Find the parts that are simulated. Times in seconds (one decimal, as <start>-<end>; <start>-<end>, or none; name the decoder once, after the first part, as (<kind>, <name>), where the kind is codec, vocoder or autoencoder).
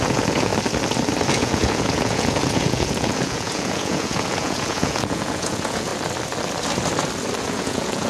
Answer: 0.0-0.5 (vocoder, Vocos); 1.3-5.9; 7.4-8.1